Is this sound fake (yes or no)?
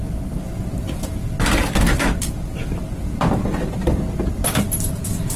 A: no